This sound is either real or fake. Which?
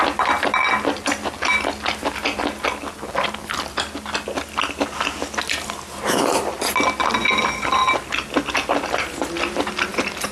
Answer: real